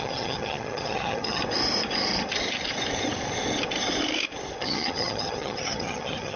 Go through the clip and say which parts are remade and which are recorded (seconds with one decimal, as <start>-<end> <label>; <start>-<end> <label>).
0.0-1.4 remade; 1.4-4.6 recorded; 4.6-6.4 remade

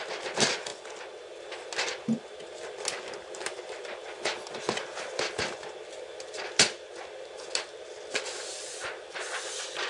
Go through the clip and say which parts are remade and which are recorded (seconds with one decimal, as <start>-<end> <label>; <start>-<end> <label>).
0.0-9.9 recorded

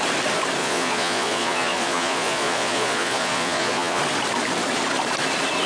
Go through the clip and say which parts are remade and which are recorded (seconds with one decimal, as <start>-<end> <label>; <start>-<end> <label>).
0.0-0.6 recorded; 0.6-4.0 remade; 4.0-5.7 recorded

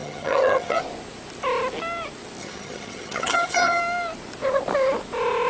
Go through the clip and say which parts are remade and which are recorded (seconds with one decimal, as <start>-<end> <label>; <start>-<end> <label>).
0.0-0.8 remade; 0.8-2.4 recorded; 2.4-3.8 remade; 3.8-5.5 recorded

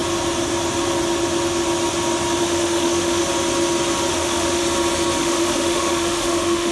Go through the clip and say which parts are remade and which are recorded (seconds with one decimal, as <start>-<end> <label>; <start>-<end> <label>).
0.0-2.4 recorded; 2.4-3.2 remade; 3.2-4.1 recorded; 4.1-4.6 remade; 4.6-5.2 recorded; 5.2-6.7 remade

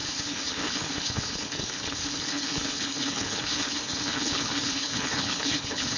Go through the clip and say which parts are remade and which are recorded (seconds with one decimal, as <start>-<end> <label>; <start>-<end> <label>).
0.0-6.0 remade

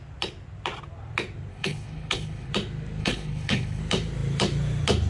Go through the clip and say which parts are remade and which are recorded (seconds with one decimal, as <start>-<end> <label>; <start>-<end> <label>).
0.0-1.5 recorded; 1.5-2.5 remade; 2.5-3.0 recorded; 3.0-3.8 remade; 3.8-5.1 recorded